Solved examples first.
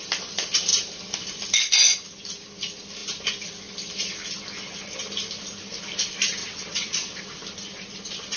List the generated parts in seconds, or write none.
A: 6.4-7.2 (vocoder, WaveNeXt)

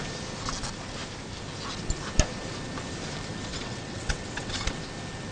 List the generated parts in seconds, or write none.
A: 3.5-4.5 (vocoder, WaveNeXt)

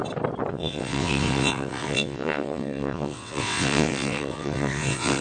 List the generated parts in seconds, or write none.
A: 0.5-5.2 (vocoder, WaveNeXt)